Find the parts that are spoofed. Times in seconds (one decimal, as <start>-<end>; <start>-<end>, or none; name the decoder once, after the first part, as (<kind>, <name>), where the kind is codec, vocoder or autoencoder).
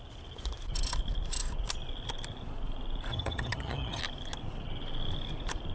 3.1-4.0 (vocoder, HiFi-GAN)